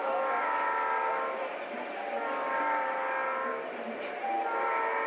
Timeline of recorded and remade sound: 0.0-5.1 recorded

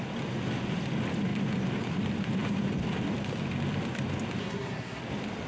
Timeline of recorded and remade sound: 0.0-4.4 recorded; 4.4-5.0 remade; 5.0-5.5 recorded

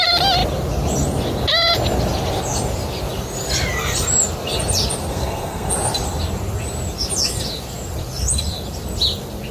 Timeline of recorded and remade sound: 0.0-5.1 recorded; 5.1-5.7 remade; 5.7-9.5 recorded

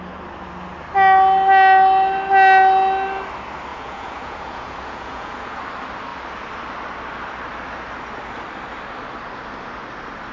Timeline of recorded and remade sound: 0.0-3.7 recorded; 3.7-5.6 remade; 5.6-10.3 recorded

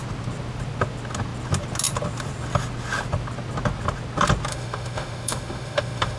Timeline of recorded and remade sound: 0.0-4.5 recorded; 4.5-6.2 remade